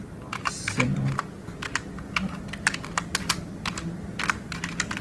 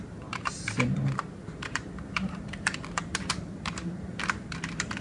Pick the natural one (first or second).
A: first